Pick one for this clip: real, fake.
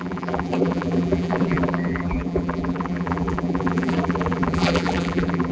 fake